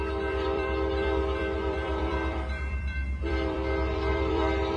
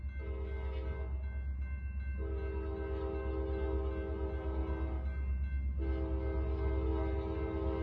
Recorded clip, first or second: second